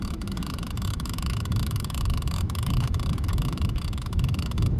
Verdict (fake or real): fake